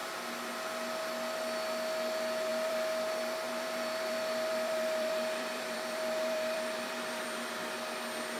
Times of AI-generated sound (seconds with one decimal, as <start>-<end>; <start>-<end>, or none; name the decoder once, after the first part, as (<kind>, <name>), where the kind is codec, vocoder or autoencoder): 0.0-0.5 (vocoder, BigVGAN v2); 2.5-7.5